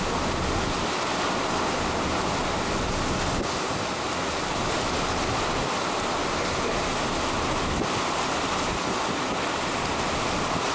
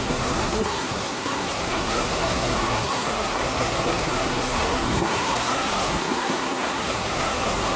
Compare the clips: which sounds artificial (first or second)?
second